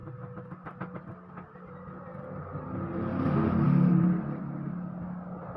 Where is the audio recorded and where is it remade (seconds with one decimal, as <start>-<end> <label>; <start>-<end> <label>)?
0.0-5.6 recorded